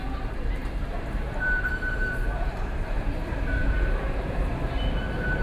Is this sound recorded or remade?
remade